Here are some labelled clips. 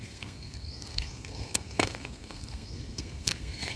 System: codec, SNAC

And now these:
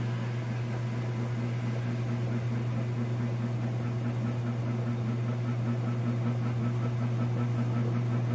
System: none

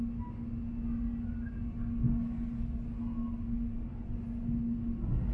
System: none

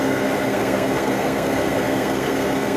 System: codec, SNAC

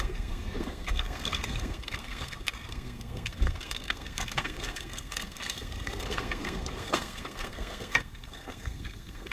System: codec, SNAC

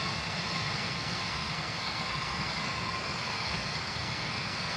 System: codec, SNAC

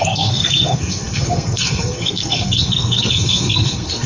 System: codec, SNAC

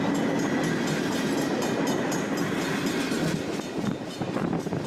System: none